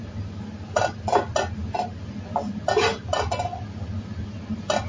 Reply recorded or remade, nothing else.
recorded